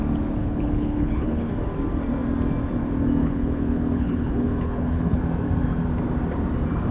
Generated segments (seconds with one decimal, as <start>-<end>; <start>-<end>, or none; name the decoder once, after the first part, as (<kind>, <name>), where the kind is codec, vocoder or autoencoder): 0.4-1.5 (codec, HILCodec); 3.2-5.2